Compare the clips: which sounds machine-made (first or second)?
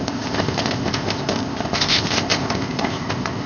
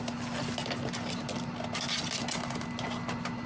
first